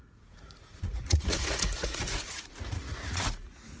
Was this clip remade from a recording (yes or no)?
yes